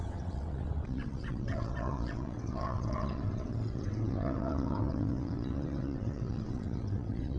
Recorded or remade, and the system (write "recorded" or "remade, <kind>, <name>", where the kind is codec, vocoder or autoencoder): remade, vocoder, WaveNeXt